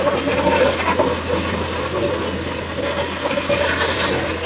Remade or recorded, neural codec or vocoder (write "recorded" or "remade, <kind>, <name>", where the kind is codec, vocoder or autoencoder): recorded